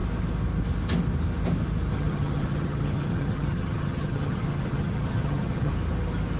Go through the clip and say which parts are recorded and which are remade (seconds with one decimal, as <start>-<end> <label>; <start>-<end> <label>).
0.0-1.9 recorded; 1.9-5.7 remade; 5.7-6.4 recorded

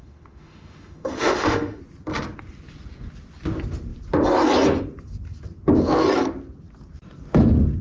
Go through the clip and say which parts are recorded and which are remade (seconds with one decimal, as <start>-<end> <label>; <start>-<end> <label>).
0.0-1.8 remade; 1.8-7.8 recorded

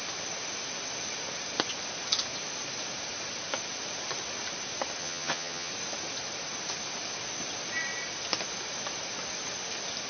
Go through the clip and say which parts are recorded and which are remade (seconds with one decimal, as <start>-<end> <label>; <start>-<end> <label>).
0.0-5.0 recorded; 5.0-5.7 remade; 5.7-10.1 recorded

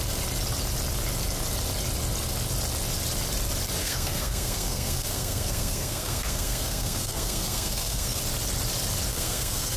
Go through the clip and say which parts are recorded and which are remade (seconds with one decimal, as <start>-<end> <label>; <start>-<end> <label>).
0.0-3.8 recorded; 3.8-8.2 remade; 8.2-9.1 recorded; 9.1-9.8 remade

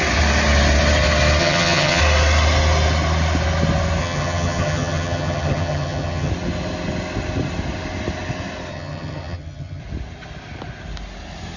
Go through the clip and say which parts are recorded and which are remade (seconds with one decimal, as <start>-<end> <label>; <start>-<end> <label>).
0.0-1.4 recorded; 1.4-2.0 remade; 2.0-4.0 recorded; 4.0-6.3 remade; 6.3-8.7 recorded; 8.7-9.8 remade; 9.8-11.6 recorded

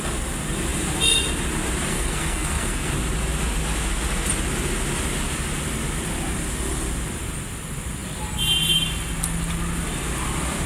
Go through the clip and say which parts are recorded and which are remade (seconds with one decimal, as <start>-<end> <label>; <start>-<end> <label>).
0.0-1.9 recorded; 1.9-2.9 remade; 2.9-10.7 recorded

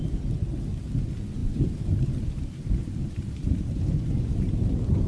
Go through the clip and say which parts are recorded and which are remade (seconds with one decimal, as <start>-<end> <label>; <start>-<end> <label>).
0.0-1.4 recorded; 1.4-4.5 remade; 4.5-5.1 recorded

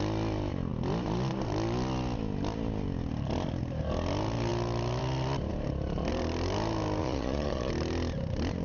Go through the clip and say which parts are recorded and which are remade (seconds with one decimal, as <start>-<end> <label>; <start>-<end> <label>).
0.0-7.0 recorded; 7.0-7.7 remade; 7.7-8.6 recorded